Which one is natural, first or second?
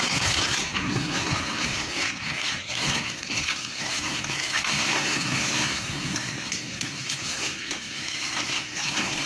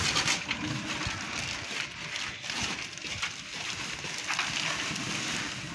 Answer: second